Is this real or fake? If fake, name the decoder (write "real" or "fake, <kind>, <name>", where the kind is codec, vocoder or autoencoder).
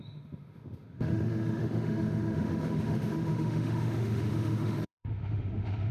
fake, autoencoder, DAC-VAE